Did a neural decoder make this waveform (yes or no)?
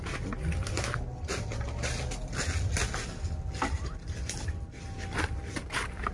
no